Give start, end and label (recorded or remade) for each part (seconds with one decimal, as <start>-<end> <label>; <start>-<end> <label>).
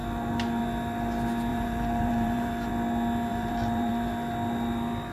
0.0-1.5 recorded; 1.5-2.7 remade; 2.7-3.3 recorded; 3.3-3.9 remade; 3.9-5.1 recorded